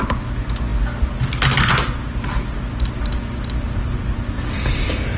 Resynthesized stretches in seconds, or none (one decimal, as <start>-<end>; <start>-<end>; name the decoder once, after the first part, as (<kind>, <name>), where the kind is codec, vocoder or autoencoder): none